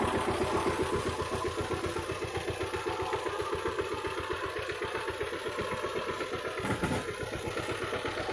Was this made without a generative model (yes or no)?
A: yes